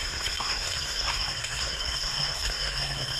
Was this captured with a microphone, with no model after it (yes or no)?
no